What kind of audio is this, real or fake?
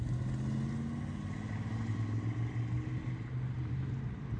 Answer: real